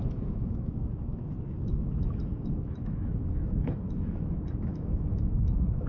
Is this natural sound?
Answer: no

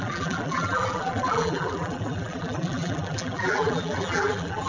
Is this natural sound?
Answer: no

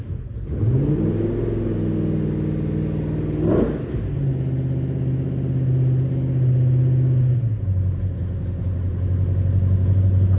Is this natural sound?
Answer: yes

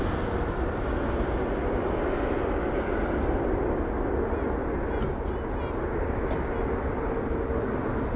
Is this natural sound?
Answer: yes